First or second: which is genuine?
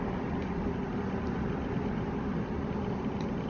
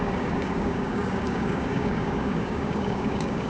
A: first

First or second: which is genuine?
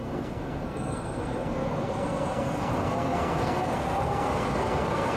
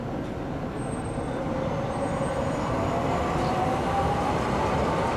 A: second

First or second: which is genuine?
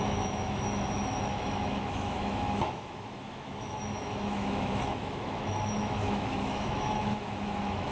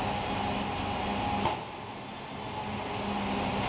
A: second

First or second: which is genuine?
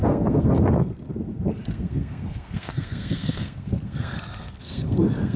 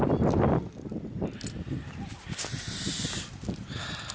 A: second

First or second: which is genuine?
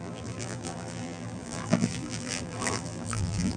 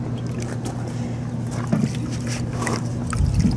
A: second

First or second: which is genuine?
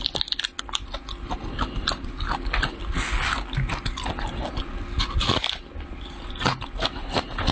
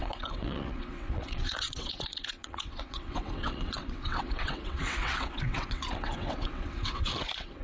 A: first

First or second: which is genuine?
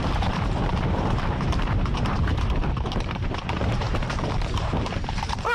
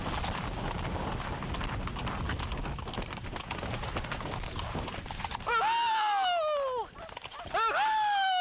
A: second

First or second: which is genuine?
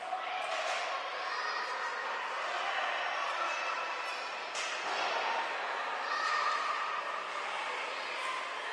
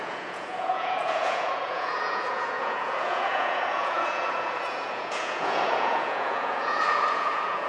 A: first